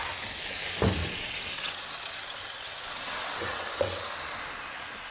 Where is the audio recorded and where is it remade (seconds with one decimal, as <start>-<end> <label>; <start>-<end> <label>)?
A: 0.0-1.0 recorded; 1.0-4.1 remade; 4.1-5.1 recorded

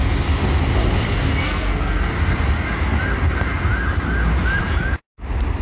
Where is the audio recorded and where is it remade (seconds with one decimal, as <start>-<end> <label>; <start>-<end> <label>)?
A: 0.0-1.4 recorded; 1.4-2.1 remade; 2.1-5.6 recorded

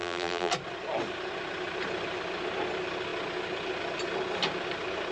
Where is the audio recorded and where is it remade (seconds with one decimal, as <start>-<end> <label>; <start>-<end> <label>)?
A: 0.0-0.5 remade; 0.5-5.1 recorded

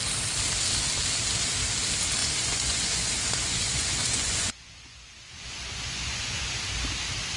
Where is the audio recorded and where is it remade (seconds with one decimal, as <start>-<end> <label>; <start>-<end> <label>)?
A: 0.0-2.2 recorded; 2.2-6.6 remade; 6.6-7.4 recorded

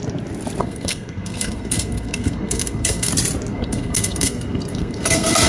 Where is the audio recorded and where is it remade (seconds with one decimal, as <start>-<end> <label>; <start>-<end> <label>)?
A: 0.0-0.6 recorded; 0.6-3.1 remade; 3.1-3.5 recorded; 3.5-5.5 remade

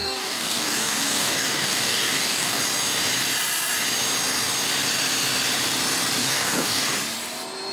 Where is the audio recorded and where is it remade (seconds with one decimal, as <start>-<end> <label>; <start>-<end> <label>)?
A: 0.0-2.6 remade; 2.6-6.2 recorded; 6.2-6.9 remade; 6.9-7.7 recorded

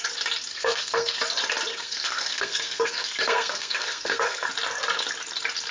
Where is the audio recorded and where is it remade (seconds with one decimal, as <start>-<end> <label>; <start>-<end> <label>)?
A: 0.0-0.5 recorded; 0.5-1.2 remade; 1.2-1.7 recorded; 1.7-4.5 remade; 4.5-5.7 recorded